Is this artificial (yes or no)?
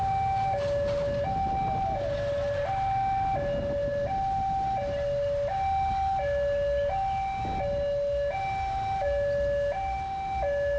no